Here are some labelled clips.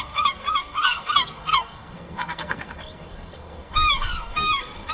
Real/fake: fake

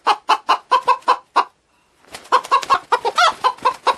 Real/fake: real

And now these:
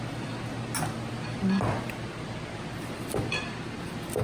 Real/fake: real